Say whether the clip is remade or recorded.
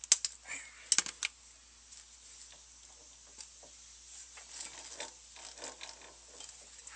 recorded